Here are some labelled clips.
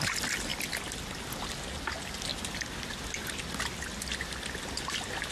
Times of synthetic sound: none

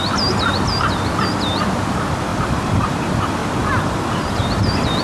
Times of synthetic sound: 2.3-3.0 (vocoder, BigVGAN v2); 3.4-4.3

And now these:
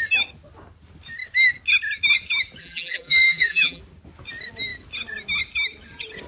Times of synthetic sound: 2.6-3.8 (vocoder, BigVGAN v2)

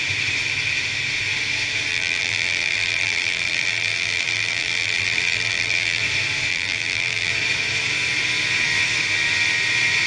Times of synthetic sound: 1.9-6.0 (vocoder, BigVGAN v2); 6.5-7.3

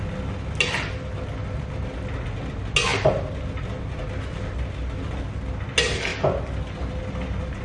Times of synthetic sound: none

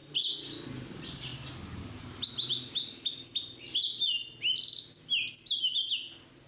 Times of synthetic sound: 0.0-0.7 (vocoder, BigVGAN v2)